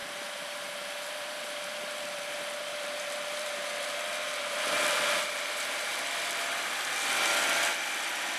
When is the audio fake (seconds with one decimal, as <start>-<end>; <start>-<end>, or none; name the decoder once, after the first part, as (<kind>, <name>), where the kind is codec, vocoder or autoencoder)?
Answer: 0.0-5.0 (vocoder, BigVGAN v2); 5.9-6.6